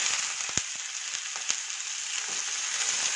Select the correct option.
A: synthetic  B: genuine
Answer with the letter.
B